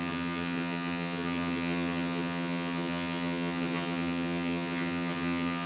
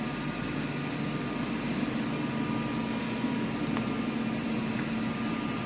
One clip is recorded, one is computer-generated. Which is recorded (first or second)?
second